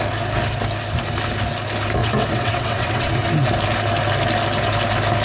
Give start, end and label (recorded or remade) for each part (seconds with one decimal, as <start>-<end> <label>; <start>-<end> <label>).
0.0-2.0 recorded; 2.0-3.1 remade; 3.1-5.2 recorded